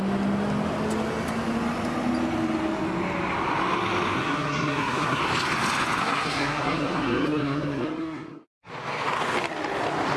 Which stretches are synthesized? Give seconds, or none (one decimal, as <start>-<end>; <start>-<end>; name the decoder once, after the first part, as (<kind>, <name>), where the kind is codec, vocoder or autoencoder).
4.2-5.2 (codec, SNAC); 6.0-8.7